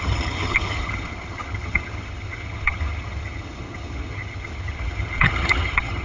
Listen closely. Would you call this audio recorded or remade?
remade